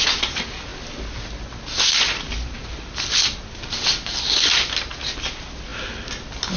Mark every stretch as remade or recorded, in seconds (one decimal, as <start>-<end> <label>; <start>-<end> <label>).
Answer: 0.0-6.6 recorded